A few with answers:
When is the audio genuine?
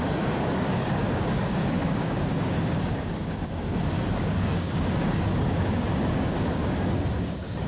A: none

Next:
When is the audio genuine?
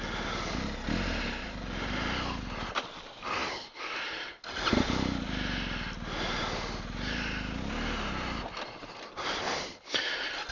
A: 0.0-10.5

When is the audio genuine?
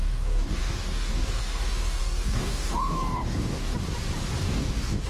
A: 3.7-4.4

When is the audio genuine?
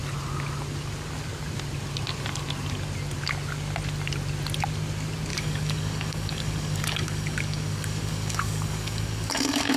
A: 0.0-5.3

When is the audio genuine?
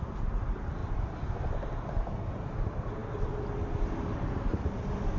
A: 0.0-5.2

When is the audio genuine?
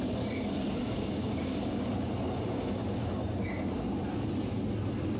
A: 0.0-0.8; 2.1-5.2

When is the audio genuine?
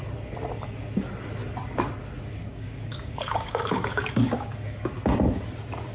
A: 0.0-2.5; 4.9-5.9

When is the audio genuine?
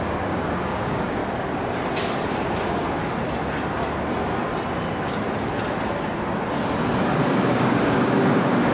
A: 1.2-2.6; 3.0-7.2